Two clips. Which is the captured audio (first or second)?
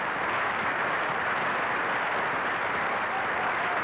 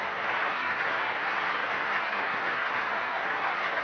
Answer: first